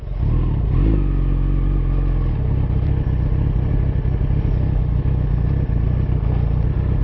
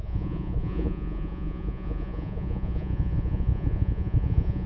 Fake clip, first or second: second